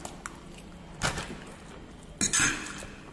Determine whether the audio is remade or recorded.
recorded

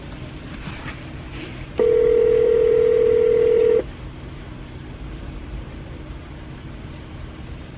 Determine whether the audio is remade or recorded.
remade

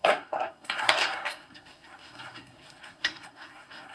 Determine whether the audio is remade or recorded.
remade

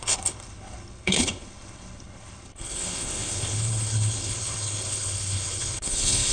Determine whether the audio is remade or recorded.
remade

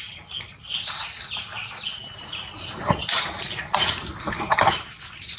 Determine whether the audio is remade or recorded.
recorded